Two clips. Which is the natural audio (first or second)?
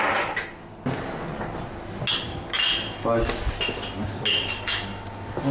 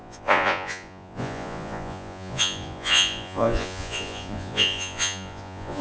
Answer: first